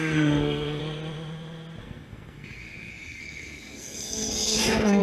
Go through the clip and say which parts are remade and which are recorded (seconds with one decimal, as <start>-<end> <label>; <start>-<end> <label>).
0.0-0.8 remade; 0.8-1.8 recorded; 1.8-5.0 remade